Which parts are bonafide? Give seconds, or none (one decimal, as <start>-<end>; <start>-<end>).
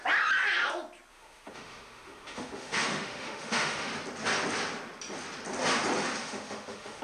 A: 0.0-1.1; 3.9-6.2